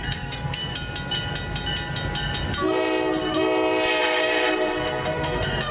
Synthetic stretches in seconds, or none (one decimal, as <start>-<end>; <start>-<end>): 0.0-0.6; 4.0-5.7